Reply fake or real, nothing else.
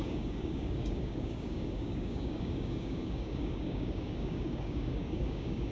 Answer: fake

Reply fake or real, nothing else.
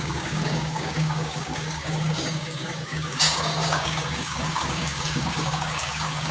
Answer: fake